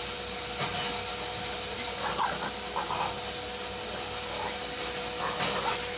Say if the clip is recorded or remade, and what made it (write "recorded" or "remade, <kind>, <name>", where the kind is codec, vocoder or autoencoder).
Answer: recorded